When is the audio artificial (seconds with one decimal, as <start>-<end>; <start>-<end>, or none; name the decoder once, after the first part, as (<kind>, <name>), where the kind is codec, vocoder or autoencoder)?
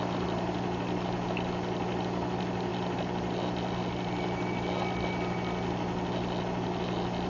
none